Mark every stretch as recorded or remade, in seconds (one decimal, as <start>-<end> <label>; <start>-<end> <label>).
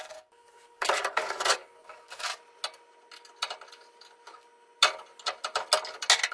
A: 0.0-2.3 remade; 2.3-6.3 recorded